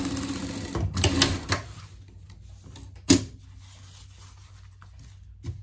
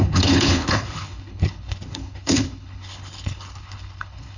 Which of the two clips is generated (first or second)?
second